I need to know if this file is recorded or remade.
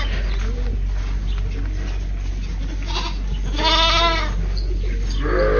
recorded